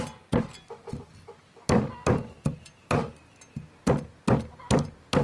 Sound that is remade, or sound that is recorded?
recorded